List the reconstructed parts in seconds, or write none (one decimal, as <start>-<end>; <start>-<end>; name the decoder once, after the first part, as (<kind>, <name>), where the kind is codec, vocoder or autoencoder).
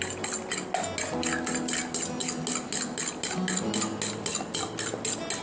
none